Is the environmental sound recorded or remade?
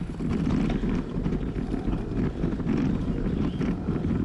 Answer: recorded